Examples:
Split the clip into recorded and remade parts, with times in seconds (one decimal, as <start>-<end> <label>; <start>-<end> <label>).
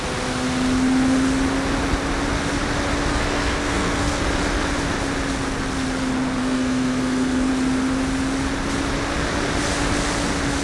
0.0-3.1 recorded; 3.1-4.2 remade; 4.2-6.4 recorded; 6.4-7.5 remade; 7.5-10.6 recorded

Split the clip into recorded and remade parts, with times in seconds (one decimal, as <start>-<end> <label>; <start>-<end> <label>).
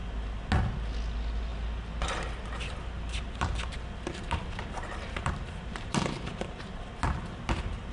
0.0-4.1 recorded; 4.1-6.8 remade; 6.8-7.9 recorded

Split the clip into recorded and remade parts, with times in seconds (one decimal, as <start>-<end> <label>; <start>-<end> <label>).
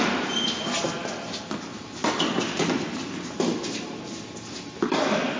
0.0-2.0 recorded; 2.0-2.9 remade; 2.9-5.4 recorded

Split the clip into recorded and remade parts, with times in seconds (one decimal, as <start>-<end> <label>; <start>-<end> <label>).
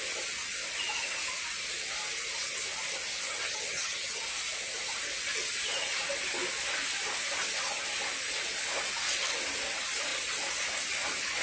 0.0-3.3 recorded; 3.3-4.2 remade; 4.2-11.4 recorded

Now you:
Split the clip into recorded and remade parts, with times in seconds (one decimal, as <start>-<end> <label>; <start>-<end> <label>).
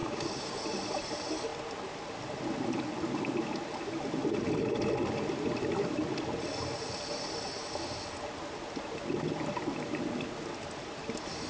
0.0-0.6 remade; 0.6-11.5 recorded